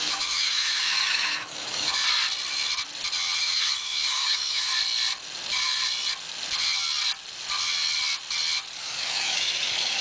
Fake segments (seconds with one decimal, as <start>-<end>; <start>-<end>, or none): 0.0-2.0; 3.4-4.7; 8.8-10.0